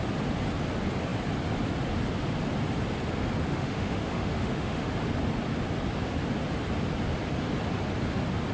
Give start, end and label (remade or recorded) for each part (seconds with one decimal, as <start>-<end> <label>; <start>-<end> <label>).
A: 0.0-3.5 recorded; 3.5-4.9 remade; 4.9-8.5 recorded